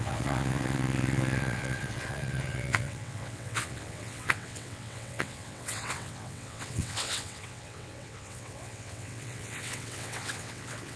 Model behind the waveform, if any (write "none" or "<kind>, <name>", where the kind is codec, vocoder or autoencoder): vocoder, WaveNeXt